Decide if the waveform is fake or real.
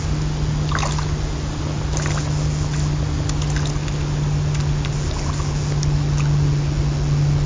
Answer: real